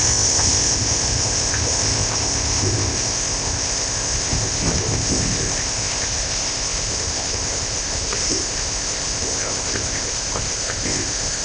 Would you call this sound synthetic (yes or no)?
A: yes